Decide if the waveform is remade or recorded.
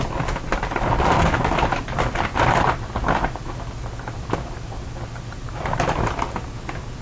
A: recorded